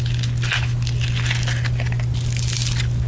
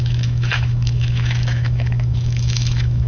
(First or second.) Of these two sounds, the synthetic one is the second